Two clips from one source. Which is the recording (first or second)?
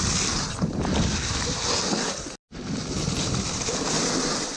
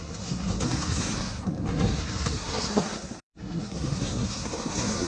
first